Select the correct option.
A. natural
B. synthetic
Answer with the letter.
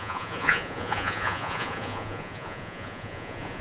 B